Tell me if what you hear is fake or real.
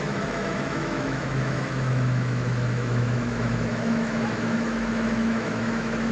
fake